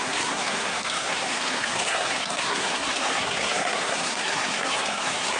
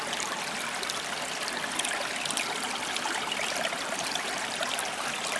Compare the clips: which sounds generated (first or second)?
first